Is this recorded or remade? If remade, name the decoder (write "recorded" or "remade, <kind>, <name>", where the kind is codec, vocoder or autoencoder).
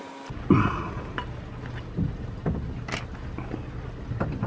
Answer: recorded